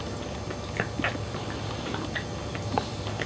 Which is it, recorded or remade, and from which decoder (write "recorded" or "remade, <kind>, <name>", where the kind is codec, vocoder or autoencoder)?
recorded